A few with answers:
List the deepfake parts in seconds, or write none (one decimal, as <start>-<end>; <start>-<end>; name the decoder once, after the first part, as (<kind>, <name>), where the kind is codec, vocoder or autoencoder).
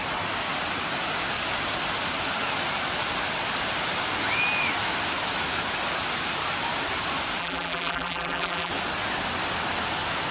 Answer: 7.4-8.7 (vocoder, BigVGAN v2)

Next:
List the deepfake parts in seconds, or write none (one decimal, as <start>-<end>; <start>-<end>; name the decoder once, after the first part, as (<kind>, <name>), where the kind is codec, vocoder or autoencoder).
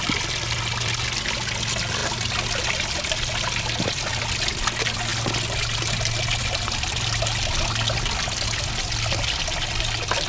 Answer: none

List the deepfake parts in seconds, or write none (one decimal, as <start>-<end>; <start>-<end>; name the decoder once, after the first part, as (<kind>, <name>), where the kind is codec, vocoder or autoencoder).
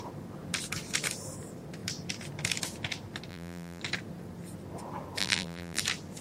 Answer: 3.3-3.8 (vocoder, BigVGAN v2); 5.2-5.8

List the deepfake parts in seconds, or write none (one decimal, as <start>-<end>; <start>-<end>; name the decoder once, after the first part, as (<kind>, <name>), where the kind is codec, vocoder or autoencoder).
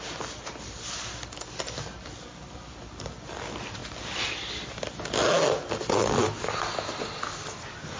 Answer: none